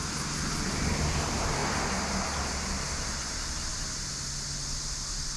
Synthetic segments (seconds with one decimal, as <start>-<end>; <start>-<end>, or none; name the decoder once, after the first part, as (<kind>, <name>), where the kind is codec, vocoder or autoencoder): 0.7-1.6 (vocoder, BigVGAN v2); 2.8-3.7